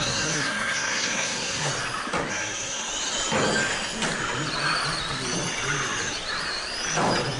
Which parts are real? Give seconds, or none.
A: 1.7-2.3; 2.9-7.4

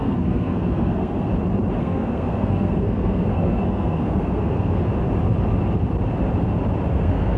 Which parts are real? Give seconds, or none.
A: 1.3-1.8; 4.9-6.9

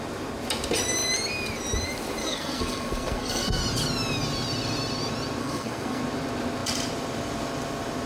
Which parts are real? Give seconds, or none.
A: 0.0-2.2; 3.6-5.4; 6.0-8.1

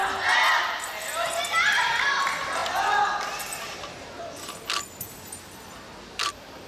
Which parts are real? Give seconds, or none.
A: 0.0-6.7

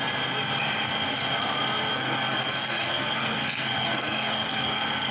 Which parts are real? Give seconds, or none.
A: 0.0-1.9

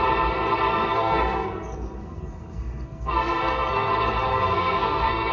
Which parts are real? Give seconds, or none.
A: 0.0-0.7; 3.9-4.3

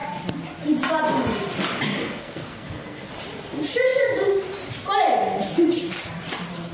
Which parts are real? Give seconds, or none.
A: 0.0-2.0; 3.1-6.7